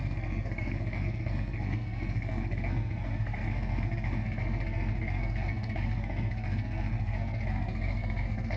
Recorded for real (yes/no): no